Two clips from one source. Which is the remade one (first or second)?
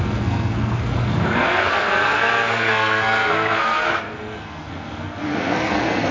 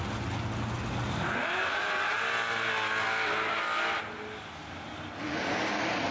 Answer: first